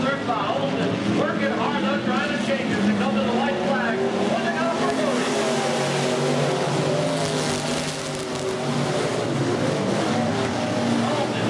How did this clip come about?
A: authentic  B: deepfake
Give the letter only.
A